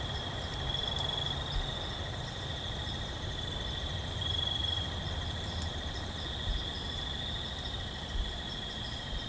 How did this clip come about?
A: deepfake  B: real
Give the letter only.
B